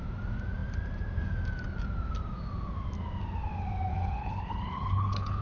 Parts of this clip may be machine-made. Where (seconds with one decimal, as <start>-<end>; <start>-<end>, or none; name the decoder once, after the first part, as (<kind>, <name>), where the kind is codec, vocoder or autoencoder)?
3.9-5.4 (codec, HILCodec)